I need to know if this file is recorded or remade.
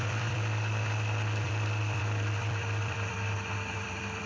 remade